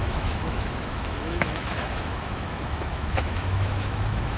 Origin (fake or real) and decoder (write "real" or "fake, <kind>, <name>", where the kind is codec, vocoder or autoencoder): fake, autoencoder, DAC-VAE